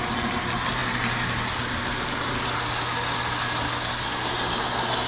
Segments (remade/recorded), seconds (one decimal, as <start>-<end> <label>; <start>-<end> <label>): 0.0-5.1 recorded